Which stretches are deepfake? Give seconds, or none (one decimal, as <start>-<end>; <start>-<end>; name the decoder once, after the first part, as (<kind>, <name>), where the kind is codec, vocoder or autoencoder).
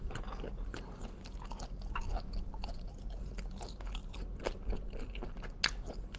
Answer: none